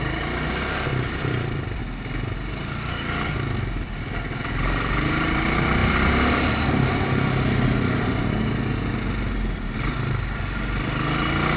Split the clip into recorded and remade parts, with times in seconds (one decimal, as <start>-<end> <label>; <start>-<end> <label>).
0.0-0.9 recorded; 0.9-1.8 remade; 1.8-11.6 recorded